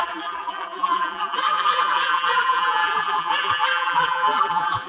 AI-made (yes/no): yes